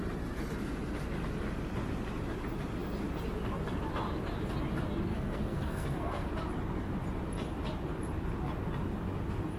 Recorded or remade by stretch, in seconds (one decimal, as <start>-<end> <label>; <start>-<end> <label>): 0.0-5.1 recorded; 5.1-6.3 remade; 6.3-9.6 recorded